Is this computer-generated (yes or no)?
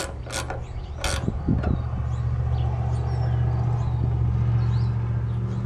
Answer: no